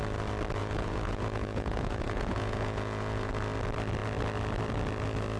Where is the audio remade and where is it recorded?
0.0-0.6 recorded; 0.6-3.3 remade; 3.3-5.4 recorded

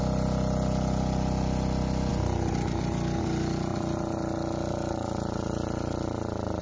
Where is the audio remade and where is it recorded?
0.0-6.6 recorded